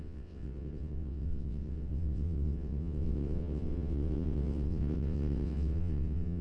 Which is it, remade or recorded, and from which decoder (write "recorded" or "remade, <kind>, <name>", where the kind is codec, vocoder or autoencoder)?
remade, vocoder, WaveNeXt